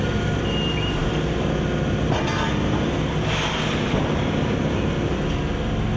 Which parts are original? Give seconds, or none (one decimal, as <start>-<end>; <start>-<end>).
0.0-6.0